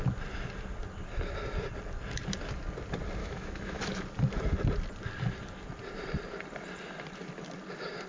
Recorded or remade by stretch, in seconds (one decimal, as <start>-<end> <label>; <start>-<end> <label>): 0.0-3.2 recorded; 3.2-3.8 remade; 3.8-8.1 recorded